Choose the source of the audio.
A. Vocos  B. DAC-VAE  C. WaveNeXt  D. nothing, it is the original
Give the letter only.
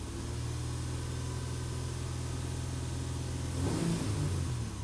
D